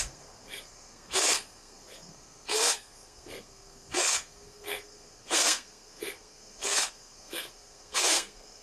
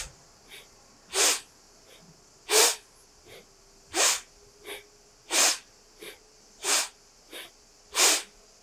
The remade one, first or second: first